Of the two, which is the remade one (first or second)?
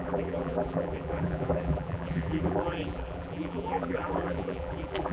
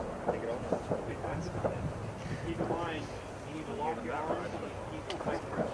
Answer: first